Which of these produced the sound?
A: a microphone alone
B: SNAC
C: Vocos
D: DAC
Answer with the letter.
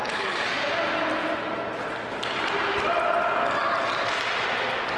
A